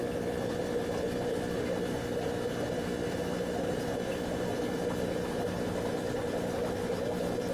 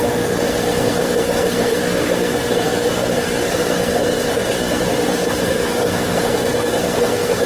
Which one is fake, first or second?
second